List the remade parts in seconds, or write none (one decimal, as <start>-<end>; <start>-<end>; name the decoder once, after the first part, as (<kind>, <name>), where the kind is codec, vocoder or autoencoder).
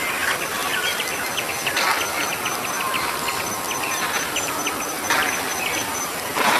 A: none